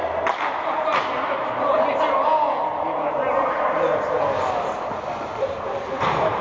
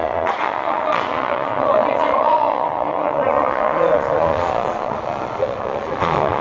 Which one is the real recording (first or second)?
first